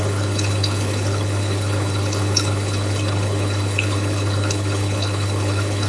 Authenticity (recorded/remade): remade